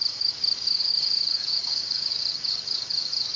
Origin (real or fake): fake